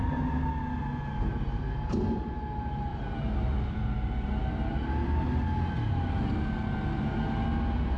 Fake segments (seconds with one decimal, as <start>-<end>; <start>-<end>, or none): 2.9-4.5